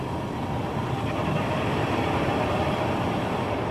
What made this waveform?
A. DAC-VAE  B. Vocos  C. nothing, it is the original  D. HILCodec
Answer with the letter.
C